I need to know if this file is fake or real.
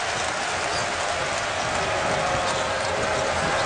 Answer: real